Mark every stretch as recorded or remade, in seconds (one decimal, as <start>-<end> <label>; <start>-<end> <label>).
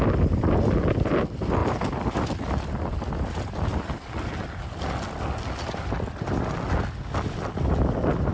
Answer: 0.0-1.6 recorded; 1.6-3.1 remade; 3.1-8.3 recorded